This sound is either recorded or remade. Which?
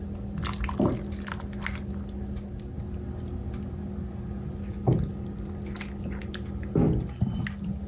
recorded